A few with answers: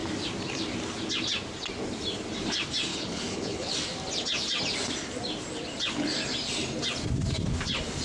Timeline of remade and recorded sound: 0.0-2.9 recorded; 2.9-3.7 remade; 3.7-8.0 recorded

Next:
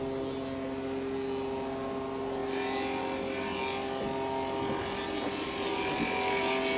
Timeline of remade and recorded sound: 0.0-6.8 recorded

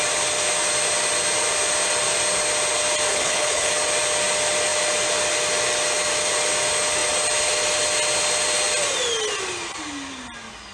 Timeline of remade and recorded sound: 0.0-3.1 recorded; 3.1-3.7 remade; 3.7-10.7 recorded

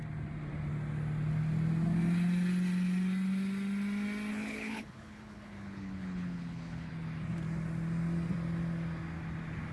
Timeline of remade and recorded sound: 0.0-4.3 recorded; 4.3-6.9 remade; 6.9-9.7 recorded

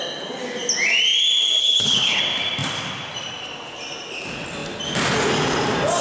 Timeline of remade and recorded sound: 0.0-1.6 recorded; 1.6-2.2 remade; 2.2-6.0 recorded

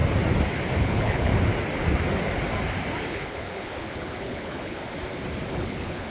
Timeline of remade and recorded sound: 0.0-0.8 recorded; 0.8-1.3 remade; 1.3-3.1 recorded; 3.1-4.8 remade; 4.8-5.5 recorded; 5.5-6.1 remade